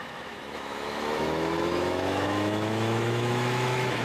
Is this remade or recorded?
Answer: remade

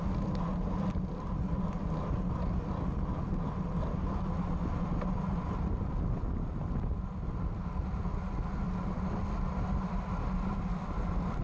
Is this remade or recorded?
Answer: recorded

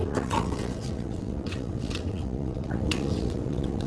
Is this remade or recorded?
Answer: remade